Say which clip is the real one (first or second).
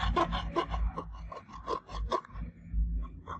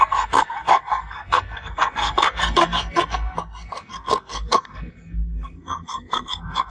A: first